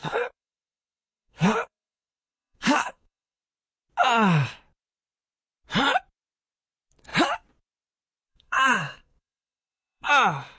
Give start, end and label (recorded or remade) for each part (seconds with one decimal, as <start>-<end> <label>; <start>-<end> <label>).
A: 0.0-3.4 remade; 3.4-8.3 recorded; 8.3-10.1 remade; 10.1-10.6 recorded